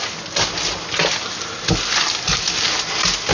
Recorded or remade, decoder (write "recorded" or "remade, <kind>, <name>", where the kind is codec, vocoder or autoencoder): recorded